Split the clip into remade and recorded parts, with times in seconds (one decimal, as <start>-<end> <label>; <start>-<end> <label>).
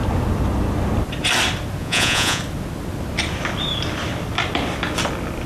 0.0-1.8 recorded; 1.8-2.4 remade; 2.4-5.5 recorded